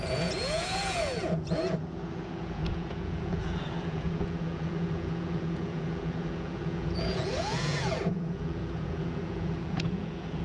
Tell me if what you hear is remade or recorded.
remade